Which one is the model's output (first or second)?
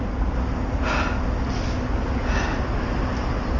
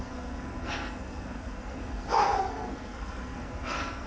second